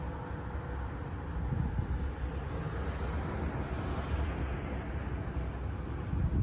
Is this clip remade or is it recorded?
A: recorded